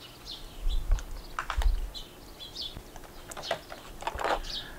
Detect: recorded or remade recorded